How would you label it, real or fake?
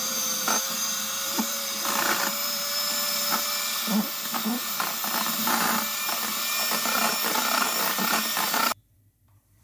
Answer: fake